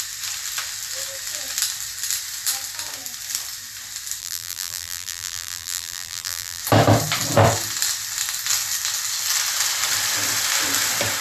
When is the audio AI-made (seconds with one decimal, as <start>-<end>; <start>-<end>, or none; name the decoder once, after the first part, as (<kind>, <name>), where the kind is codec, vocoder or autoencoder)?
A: 4.2-6.6 (vocoder, BigVGAN v2)